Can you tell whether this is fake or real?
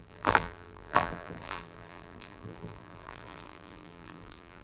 fake